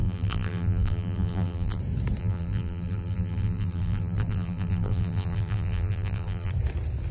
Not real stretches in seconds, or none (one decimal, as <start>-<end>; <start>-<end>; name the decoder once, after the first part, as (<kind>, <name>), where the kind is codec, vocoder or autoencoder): 0.0-1.8 (vocoder, BigVGAN v2); 2.2-6.5